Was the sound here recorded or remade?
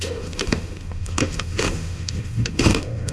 remade